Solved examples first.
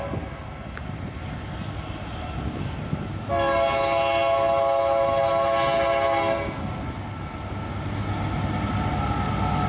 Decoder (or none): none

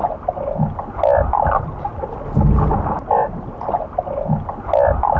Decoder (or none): none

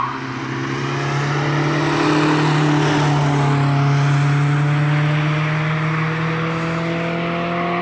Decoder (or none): none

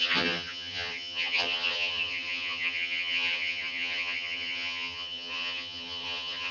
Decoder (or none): vocoder, HiFi-GAN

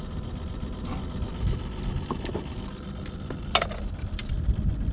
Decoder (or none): none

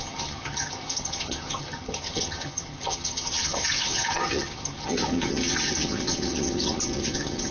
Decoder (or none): vocoder, HiFi-GAN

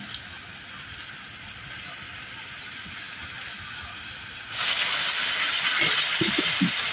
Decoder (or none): none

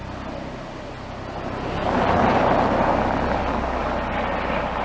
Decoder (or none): none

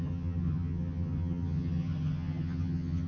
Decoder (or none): vocoder, HiFi-GAN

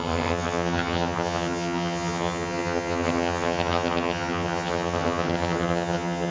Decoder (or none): vocoder, HiFi-GAN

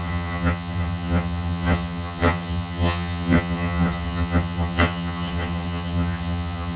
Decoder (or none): vocoder, HiFi-GAN